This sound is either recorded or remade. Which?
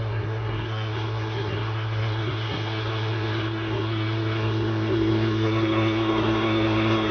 remade